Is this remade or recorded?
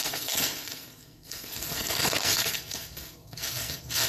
remade